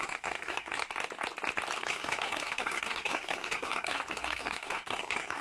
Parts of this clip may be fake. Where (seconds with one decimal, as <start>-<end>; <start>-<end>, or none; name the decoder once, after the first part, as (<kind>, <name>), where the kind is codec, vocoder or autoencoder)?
0.0-0.8 (codec, SNAC); 1.8-5.4